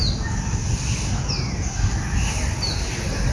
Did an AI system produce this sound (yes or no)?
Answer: no